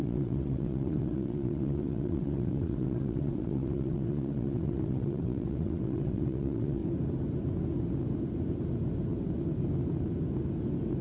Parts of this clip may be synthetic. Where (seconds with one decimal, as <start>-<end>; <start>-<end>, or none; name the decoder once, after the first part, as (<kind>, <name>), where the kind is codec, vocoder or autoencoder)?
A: 0.0-6.8 (vocoder, WaveNeXt)